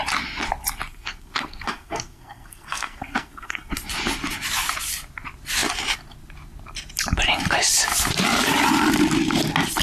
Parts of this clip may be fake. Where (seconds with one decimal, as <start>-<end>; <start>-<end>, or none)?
0.9-3.7

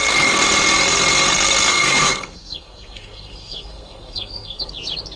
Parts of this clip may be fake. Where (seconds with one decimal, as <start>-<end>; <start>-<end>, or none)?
1.7-4.7